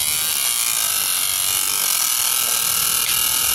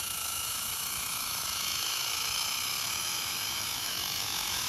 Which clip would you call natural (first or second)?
first